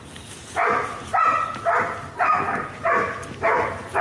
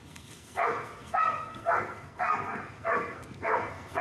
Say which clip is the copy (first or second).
second